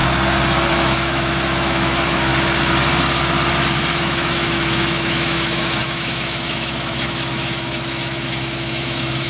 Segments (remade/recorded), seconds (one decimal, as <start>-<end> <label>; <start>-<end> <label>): 0.0-0.7 recorded; 0.7-2.3 remade; 2.3-4.0 recorded; 4.0-9.3 remade